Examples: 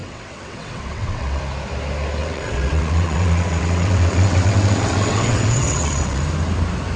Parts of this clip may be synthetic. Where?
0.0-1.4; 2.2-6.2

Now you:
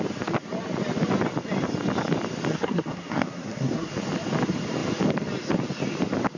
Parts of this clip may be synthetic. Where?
2.5-3.9

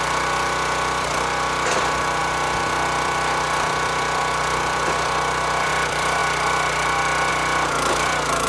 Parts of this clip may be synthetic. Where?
0.0-6.2; 7.3-8.5

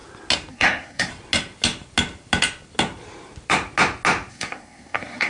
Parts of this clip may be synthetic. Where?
0.5-1.1; 4.3-5.3

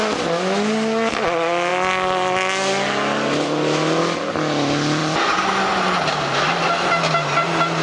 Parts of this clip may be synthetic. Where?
5.0-6.7